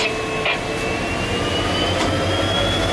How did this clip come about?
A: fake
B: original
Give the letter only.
B